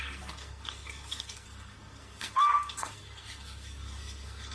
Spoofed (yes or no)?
yes